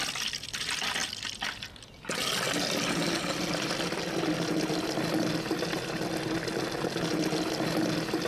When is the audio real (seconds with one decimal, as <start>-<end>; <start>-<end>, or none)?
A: 0.0-8.3